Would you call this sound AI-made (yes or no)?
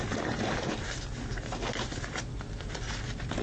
no